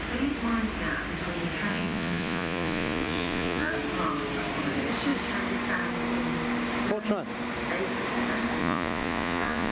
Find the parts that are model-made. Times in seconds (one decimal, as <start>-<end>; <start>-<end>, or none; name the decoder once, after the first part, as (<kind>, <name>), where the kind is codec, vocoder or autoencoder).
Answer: 1.7-3.7 (vocoder, Vocos); 8.6-9.7